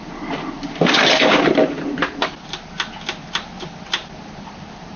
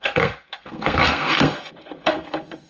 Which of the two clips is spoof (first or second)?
second